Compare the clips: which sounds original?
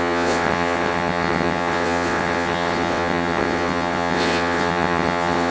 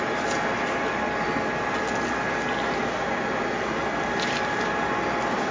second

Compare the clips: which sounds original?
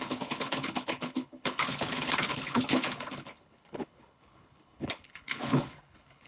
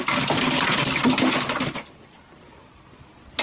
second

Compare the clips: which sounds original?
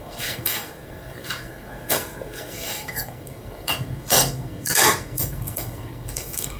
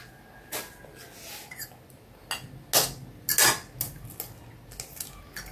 second